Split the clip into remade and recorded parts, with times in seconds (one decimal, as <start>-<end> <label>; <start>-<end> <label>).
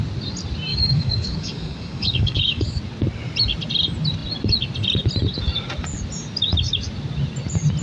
0.0-0.7 recorded; 0.7-2.8 remade; 2.8-7.8 recorded